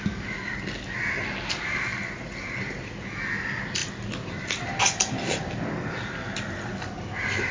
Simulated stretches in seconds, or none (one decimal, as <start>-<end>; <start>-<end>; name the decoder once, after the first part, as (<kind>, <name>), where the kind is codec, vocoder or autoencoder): none